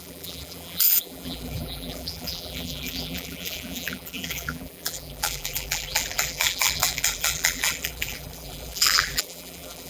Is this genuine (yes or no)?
no